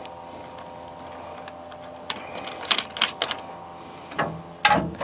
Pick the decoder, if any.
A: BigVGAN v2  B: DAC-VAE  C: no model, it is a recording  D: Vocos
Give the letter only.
C